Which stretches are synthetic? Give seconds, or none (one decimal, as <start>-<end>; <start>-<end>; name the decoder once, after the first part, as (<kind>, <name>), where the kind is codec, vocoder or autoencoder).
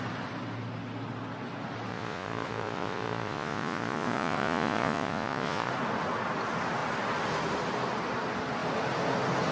1.9-5.7 (vocoder, Vocos)